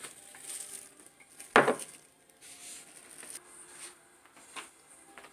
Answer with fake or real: real